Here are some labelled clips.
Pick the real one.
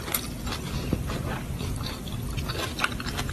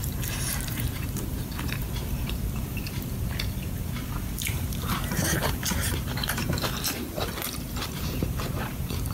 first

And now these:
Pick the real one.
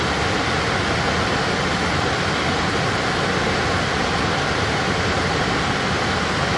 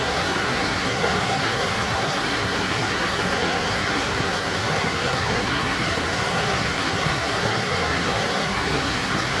first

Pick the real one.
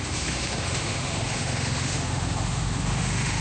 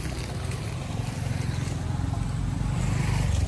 second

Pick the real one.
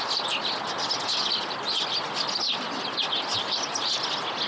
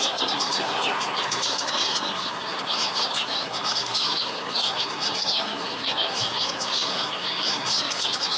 first